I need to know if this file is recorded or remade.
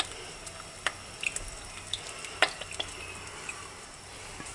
recorded